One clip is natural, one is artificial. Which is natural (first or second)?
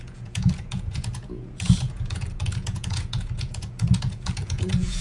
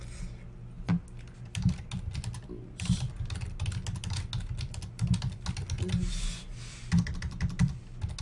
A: second